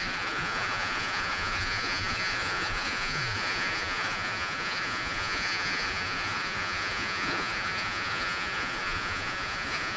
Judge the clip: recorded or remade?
remade